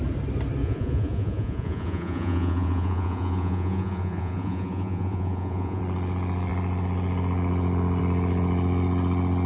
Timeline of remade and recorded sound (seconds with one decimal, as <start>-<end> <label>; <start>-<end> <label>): 0.0-0.6 recorded; 0.6-5.8 remade; 5.8-9.5 recorded